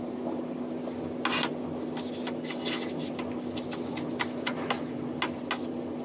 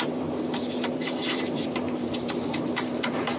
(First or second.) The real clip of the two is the first